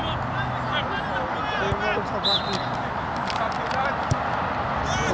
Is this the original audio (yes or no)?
yes